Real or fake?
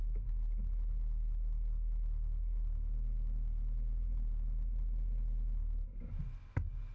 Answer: real